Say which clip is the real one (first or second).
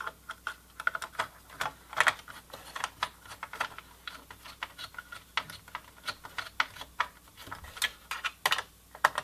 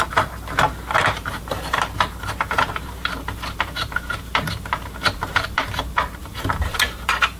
first